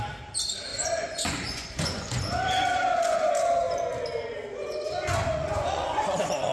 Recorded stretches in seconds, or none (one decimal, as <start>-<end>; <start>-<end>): 0.0-0.7; 3.3-4.6